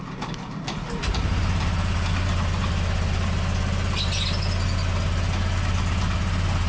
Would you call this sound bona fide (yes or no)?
yes